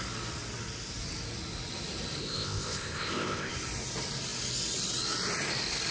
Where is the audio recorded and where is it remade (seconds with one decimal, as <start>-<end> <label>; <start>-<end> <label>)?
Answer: 0.0-2.2 recorded; 2.2-3.5 remade; 3.5-5.9 recorded